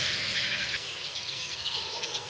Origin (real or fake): fake